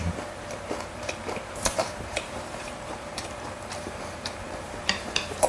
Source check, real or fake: fake